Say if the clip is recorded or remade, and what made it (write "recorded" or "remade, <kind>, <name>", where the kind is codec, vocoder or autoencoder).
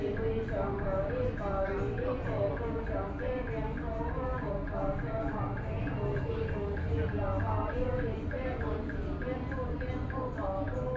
recorded